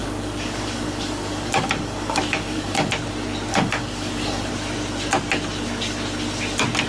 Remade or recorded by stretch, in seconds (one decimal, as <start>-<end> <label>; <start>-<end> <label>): 0.0-2.9 remade; 2.9-3.5 recorded; 3.5-4.5 remade; 4.5-6.9 recorded